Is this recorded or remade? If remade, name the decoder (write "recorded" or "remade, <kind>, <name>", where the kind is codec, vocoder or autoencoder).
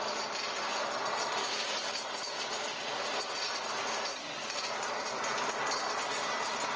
recorded